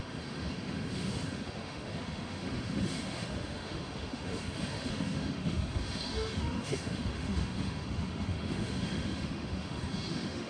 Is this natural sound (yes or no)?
no